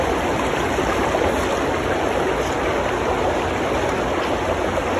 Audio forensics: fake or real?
real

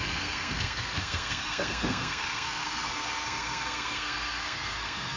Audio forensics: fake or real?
fake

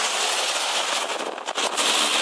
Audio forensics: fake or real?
real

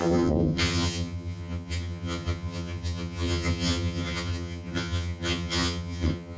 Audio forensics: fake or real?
fake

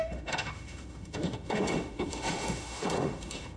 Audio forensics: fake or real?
fake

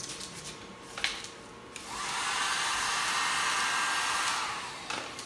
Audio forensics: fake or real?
real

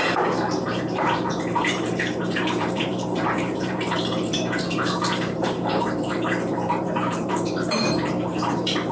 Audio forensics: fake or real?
fake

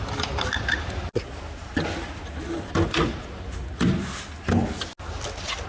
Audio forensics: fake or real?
real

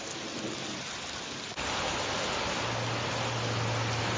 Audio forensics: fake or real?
real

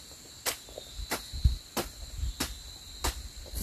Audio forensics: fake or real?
real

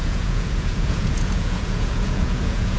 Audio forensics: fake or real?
fake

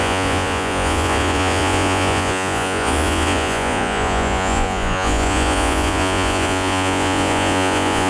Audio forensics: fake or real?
fake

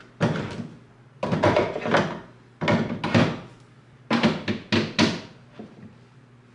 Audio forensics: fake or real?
real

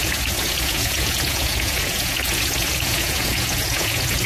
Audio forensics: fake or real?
fake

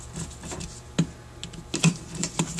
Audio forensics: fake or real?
real